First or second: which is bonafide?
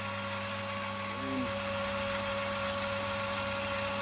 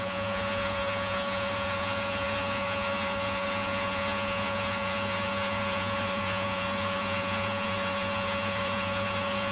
first